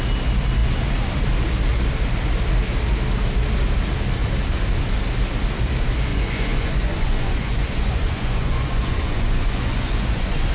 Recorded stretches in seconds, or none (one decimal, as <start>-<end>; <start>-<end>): 0.0-6.1